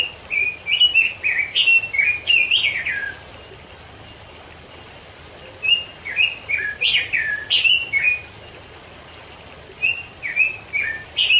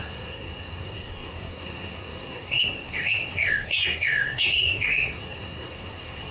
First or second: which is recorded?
first